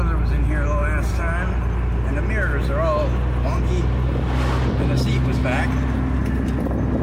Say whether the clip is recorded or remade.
recorded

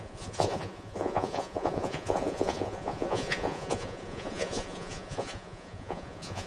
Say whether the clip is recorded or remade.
remade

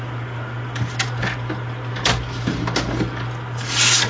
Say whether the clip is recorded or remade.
recorded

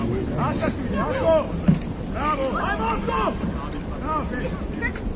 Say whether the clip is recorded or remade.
recorded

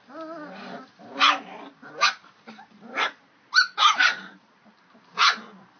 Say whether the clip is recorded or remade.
recorded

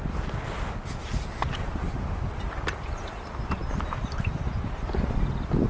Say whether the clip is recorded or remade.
recorded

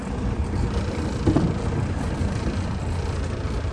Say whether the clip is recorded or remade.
recorded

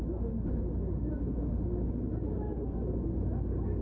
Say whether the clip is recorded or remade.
recorded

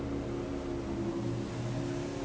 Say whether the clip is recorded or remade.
recorded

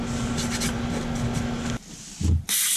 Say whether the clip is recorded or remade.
recorded